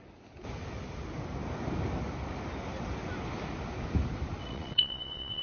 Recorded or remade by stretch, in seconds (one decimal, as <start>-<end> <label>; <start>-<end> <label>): 0.0-4.4 recorded; 4.4-5.4 remade